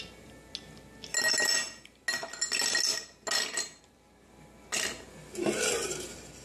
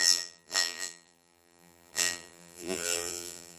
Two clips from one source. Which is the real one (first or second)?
first